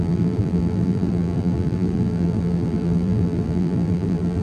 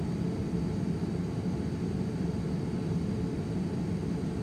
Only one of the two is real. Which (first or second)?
second